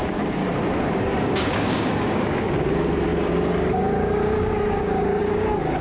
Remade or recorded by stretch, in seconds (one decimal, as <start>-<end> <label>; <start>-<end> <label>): 0.0-0.4 remade; 0.4-1.0 recorded; 1.0-5.8 remade